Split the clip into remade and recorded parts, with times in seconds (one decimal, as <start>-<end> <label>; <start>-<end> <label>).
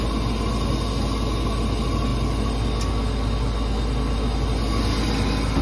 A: 0.0-5.6 recorded